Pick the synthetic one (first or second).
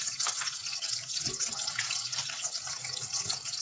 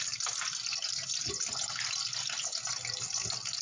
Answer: first